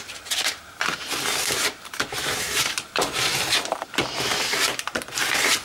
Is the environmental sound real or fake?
fake